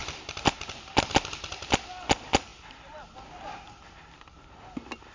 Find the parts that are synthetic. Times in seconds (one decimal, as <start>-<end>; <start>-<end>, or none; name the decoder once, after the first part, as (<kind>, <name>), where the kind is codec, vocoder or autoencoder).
none